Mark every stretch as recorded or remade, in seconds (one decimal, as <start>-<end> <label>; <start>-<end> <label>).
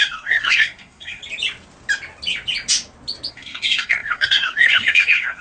0.0-1.2 remade; 1.2-3.3 recorded; 3.3-5.4 remade